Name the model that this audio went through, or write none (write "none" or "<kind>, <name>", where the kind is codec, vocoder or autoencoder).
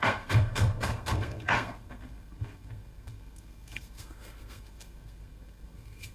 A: codec, SNAC